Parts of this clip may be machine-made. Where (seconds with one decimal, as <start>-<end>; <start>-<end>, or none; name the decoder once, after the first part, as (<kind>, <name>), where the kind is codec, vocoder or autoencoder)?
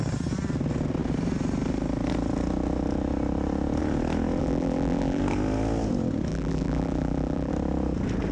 4.4-5.2 (vocoder, BigVGAN v2); 6.3-7.5